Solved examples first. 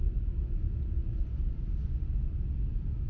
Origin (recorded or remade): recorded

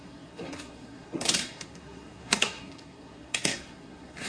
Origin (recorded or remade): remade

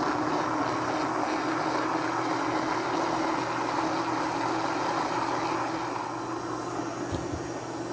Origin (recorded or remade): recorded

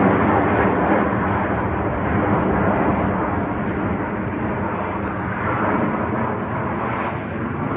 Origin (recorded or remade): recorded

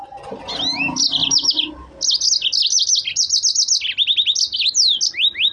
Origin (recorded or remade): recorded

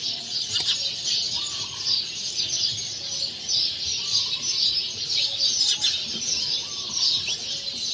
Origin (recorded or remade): recorded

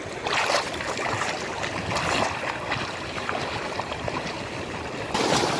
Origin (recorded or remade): recorded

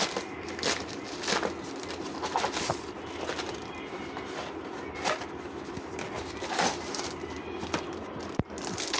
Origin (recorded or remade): recorded